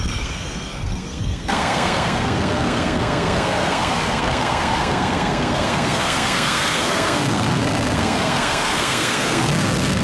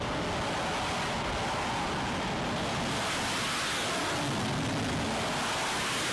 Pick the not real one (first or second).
first